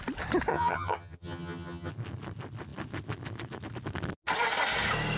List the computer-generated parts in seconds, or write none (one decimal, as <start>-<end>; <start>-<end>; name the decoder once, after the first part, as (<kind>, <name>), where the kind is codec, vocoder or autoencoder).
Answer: 0.5-1.9 (vocoder, HiFi-GAN)